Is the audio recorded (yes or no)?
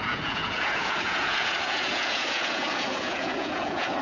no